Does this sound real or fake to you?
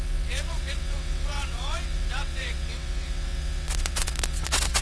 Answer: fake